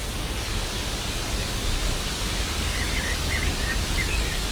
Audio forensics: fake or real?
fake